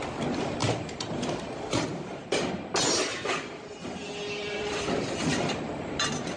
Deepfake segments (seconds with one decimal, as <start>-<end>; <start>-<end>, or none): 0.6-2.5; 3.1-3.9; 4.4-5.0